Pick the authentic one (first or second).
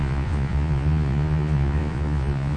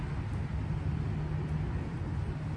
second